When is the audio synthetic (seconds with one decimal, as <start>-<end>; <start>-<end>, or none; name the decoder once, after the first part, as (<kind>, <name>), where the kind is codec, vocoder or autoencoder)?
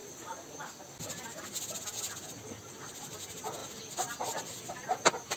none